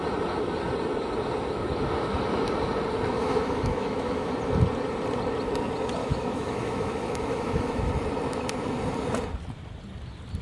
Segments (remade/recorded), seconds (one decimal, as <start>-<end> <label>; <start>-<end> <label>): 0.0-3.2 recorded; 3.2-4.3 remade; 4.3-6.0 recorded; 6.0-7.9 remade; 7.9-10.4 recorded